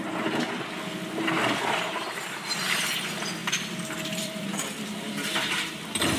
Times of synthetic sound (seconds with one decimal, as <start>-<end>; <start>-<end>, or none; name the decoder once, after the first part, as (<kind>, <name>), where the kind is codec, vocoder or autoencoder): 3.4-5.8 (vocoder, BigVGAN v2)